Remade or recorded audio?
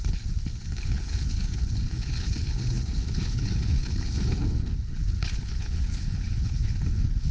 remade